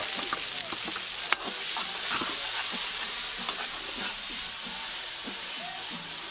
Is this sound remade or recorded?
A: recorded